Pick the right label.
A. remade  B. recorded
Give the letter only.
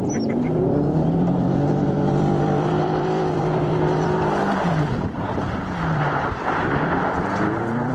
A